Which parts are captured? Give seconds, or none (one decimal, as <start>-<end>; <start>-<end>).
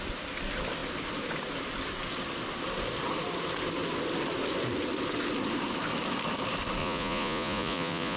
0.0-6.8